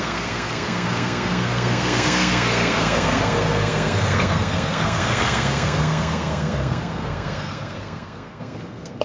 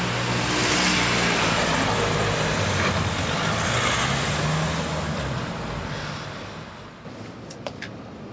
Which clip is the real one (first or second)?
second